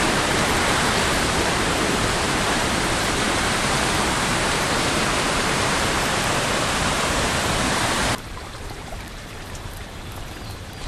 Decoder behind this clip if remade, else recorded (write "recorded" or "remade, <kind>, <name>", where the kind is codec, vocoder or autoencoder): remade, vocoder, BigVGAN v2